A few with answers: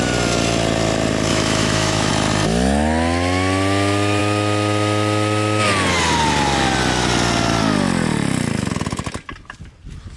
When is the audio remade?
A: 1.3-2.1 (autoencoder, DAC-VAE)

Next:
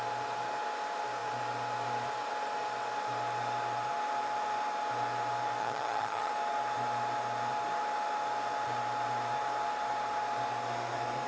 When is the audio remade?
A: 5.6-6.3 (vocoder, HiFi-GAN)

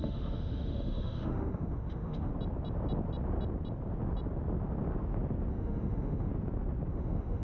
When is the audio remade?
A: 0.0-2.3 (autoencoder, DAC-VAE); 5.5-6.3; 6.9-7.4

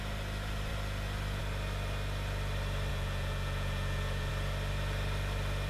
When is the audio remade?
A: 2.9-4.3 (vocoder, Vocos)